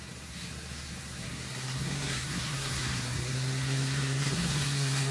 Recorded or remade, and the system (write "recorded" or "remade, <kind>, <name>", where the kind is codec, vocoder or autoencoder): remade, codec, SNAC